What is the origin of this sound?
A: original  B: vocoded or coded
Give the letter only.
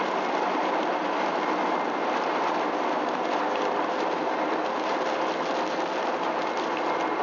A